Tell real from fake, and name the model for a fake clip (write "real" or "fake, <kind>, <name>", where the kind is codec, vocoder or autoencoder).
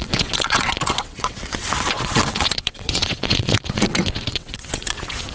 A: fake, vocoder, WaveNeXt